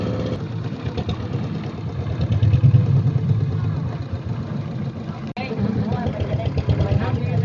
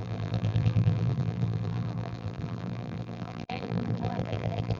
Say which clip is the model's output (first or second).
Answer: second